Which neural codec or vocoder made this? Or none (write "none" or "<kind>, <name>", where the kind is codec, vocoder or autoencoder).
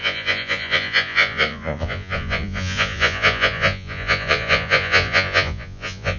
vocoder, Vocos